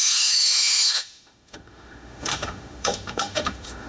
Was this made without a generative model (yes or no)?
no